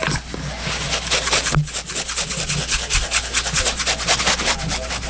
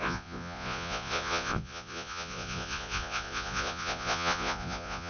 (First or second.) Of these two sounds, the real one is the first